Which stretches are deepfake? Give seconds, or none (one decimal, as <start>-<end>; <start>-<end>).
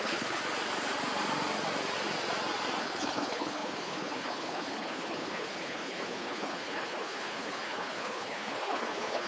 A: 0.0-0.4; 2.8-9.3